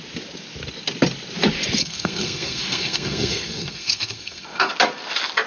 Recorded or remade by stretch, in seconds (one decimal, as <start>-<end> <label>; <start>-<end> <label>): 0.0-1.8 recorded; 1.8-4.7 remade; 4.7-5.5 recorded